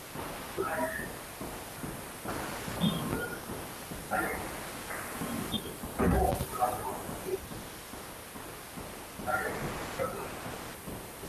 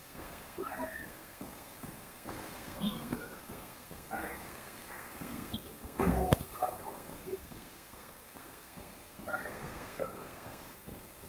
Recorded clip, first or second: first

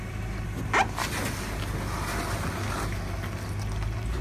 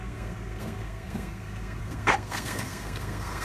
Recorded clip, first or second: first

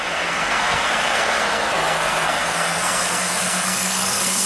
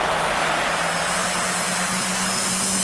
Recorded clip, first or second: second